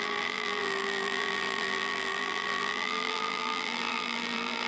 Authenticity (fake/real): fake